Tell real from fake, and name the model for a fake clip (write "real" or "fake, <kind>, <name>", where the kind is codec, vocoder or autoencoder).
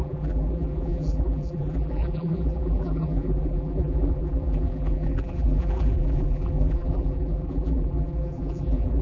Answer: fake, vocoder, BigVGAN v2